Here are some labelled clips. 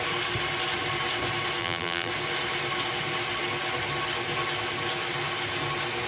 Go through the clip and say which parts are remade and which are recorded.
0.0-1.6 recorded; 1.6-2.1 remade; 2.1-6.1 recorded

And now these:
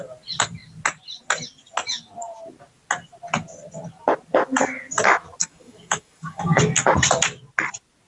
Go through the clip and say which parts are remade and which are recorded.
0.0-5.4 recorded; 5.4-6.6 remade; 6.6-8.1 recorded

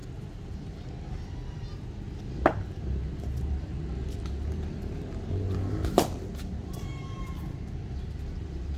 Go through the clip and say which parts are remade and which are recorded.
0.0-0.5 remade; 0.5-6.6 recorded; 6.6-7.4 remade; 7.4-8.8 recorded

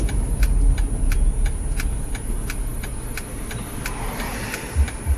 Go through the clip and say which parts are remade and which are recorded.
0.0-5.2 recorded